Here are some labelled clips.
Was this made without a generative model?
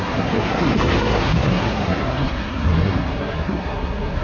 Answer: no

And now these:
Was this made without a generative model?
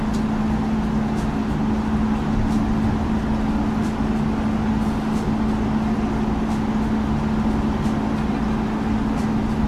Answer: yes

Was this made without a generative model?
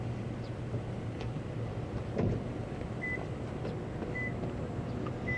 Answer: yes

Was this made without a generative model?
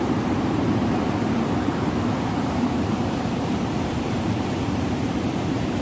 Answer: no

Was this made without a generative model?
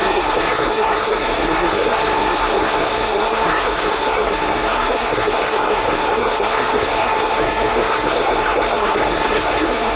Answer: no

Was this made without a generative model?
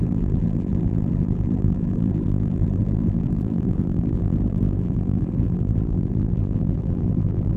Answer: no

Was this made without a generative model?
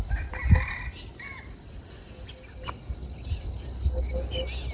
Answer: yes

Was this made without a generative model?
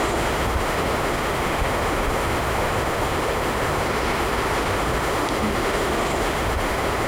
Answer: no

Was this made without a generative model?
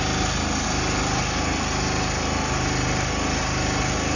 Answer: yes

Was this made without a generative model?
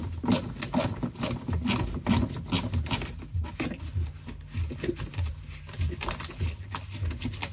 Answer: yes